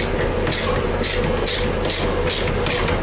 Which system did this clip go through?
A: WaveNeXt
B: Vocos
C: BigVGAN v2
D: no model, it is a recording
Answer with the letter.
D